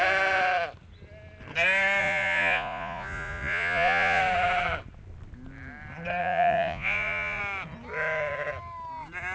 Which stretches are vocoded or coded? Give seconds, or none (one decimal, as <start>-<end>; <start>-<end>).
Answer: 2.0-4.2; 6.2-7.4